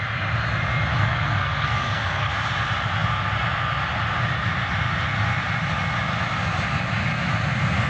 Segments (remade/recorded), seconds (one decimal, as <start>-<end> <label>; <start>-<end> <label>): 0.0-1.0 recorded; 1.0-2.3 remade; 2.3-7.9 recorded